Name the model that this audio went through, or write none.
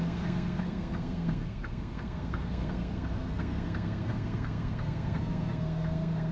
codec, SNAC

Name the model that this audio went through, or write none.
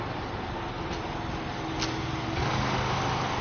none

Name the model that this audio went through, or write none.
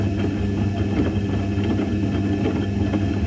none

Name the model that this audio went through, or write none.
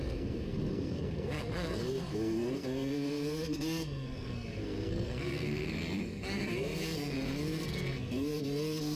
codec, SNAC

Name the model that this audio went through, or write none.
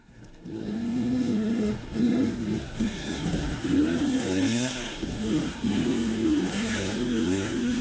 codec, SNAC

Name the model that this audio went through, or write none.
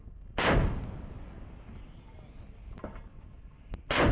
none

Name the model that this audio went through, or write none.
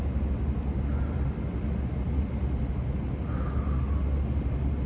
none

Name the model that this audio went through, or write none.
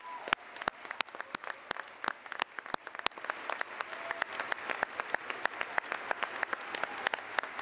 none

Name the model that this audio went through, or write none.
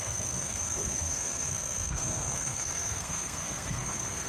codec, SNAC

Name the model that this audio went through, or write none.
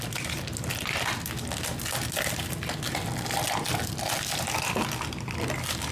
none